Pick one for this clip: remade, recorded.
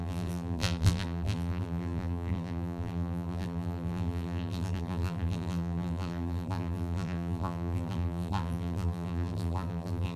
remade